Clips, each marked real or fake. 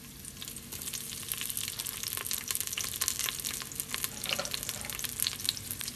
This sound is real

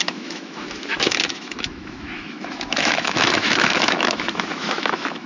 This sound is fake